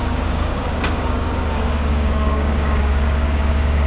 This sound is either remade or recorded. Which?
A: remade